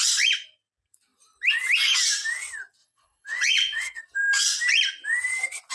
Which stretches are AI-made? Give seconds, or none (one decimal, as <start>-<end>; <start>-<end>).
2.8-4.0